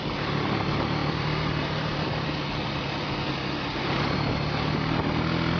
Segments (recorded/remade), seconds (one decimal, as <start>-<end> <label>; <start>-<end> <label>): 0.0-1.0 recorded; 1.0-4.1 remade; 4.1-5.6 recorded